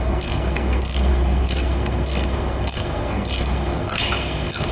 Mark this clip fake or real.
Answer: fake